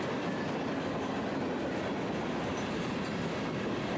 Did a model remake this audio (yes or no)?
no